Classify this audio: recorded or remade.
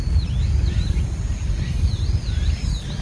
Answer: recorded